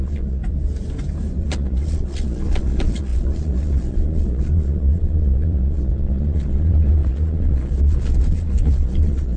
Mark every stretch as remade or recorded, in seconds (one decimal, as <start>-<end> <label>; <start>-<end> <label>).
0.0-0.4 remade; 0.4-1.4 recorded; 1.4-9.4 remade